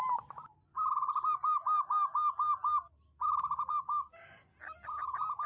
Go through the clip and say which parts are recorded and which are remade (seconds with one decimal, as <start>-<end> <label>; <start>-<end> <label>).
0.0-5.5 recorded